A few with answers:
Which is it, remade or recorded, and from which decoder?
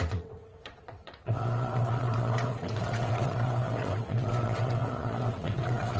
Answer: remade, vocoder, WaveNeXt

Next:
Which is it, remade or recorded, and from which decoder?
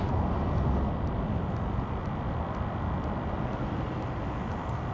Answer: recorded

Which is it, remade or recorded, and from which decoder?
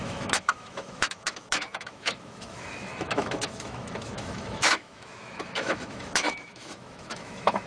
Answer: remade, autoencoder, DAC-VAE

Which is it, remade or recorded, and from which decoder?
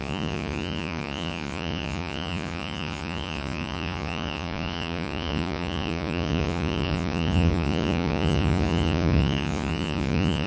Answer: remade, vocoder, Vocos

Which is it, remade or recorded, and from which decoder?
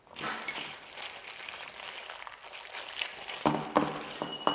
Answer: recorded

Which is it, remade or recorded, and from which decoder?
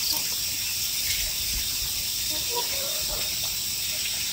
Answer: recorded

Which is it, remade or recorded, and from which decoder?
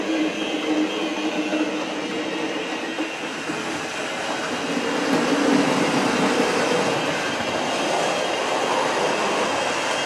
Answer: recorded